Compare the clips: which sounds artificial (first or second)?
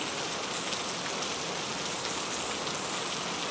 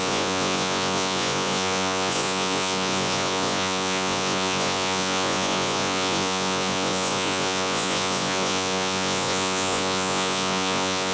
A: second